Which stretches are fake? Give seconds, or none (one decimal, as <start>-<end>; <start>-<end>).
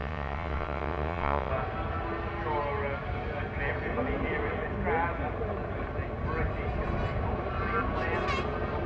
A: 0.0-1.5